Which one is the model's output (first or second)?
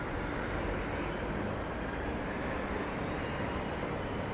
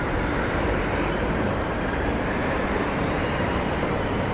second